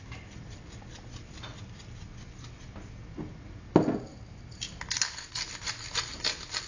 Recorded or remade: recorded